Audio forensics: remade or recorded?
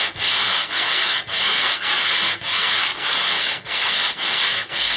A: remade